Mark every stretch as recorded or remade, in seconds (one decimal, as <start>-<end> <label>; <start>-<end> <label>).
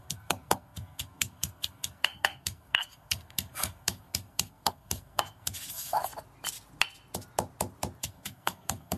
0.0-6.1 remade; 6.1-8.0 recorded; 8.0-9.0 remade